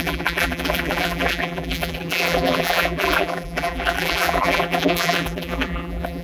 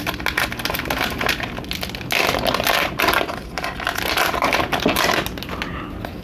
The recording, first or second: second